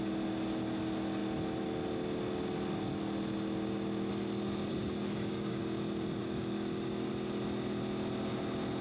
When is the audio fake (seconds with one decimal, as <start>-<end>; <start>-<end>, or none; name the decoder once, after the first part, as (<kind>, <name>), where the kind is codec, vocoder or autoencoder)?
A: 4.7-5.6 (codec, DAC); 6.2-7.1